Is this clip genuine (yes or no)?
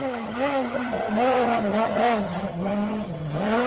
no